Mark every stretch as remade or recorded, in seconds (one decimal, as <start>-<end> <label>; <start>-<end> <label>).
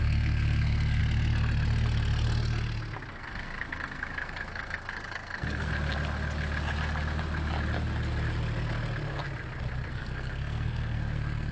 0.0-1.0 remade; 1.0-3.1 recorded; 3.1-5.7 remade; 5.7-9.9 recorded; 9.9-11.5 remade